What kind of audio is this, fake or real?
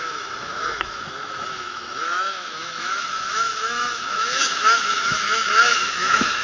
fake